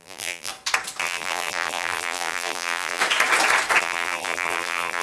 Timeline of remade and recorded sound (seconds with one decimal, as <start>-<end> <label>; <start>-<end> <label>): 0.0-0.5 remade; 0.5-1.0 recorded; 1.0-3.0 remade; 3.0-3.8 recorded; 3.8-5.0 remade

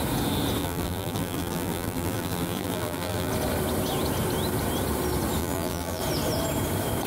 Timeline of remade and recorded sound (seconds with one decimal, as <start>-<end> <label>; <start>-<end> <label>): 0.0-0.6 recorded; 0.6-3.3 remade; 3.3-5.4 recorded; 5.4-6.0 remade; 6.0-7.1 recorded

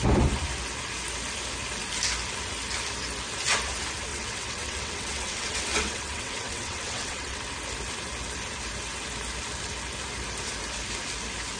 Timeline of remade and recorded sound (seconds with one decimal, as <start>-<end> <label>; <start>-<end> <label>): 0.0-4.1 recorded; 4.1-7.4 remade; 7.4-11.6 recorded

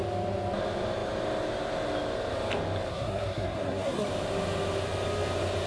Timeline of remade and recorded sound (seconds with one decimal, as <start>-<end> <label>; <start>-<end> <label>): 0.0-2.9 recorded; 2.9-4.1 remade; 4.1-5.7 recorded

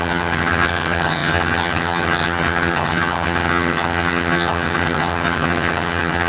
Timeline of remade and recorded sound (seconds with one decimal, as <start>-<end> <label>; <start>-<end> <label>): 0.0-6.3 remade

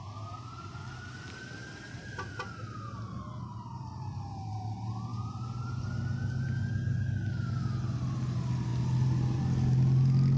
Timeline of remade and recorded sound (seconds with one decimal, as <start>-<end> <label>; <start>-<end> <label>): 0.0-10.4 recorded

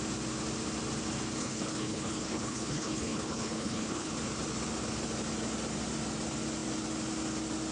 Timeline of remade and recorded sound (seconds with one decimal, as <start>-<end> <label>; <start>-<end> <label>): 0.0-1.4 recorded; 1.4-4.1 remade; 4.1-7.7 recorded